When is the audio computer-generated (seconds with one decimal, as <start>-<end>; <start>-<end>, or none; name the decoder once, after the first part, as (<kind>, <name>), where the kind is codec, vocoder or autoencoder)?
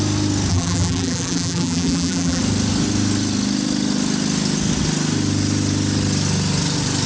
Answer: 0.5-2.4 (vocoder, BigVGAN v2)